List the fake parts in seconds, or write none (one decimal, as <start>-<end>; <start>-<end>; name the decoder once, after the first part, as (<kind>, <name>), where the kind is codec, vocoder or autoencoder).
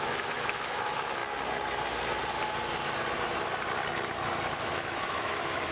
0.0-1.2 (autoencoder, DAC-VAE); 4.6-5.7